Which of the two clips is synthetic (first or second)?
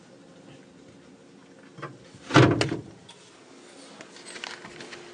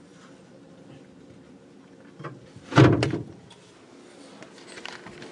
second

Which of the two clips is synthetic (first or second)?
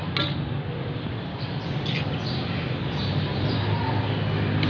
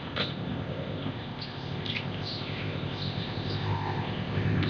second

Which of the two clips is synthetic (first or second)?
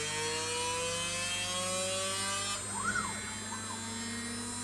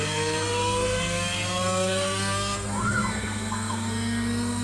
second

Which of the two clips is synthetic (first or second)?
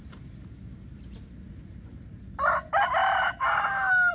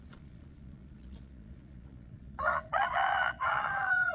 second